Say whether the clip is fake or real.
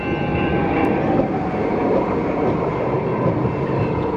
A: real